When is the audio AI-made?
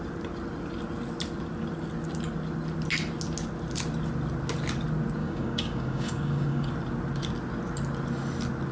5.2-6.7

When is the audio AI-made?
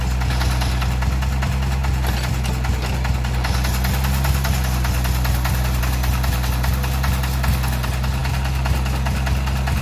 none